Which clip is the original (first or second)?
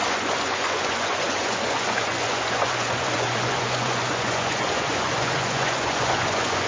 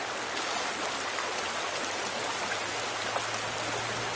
second